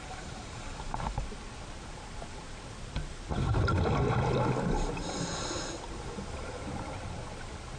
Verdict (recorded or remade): recorded